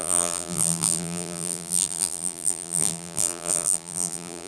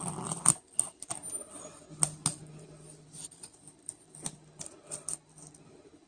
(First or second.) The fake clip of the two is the first